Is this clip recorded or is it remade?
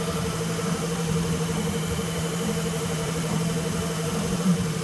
remade